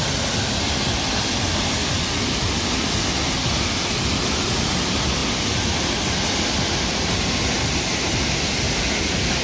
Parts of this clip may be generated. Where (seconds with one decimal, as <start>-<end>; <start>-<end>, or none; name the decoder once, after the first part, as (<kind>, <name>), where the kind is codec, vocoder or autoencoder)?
none